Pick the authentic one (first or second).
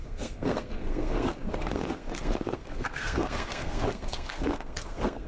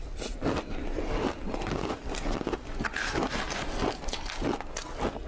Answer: second